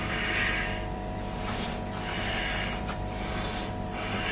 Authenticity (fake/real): fake